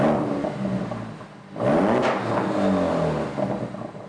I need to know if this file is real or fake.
real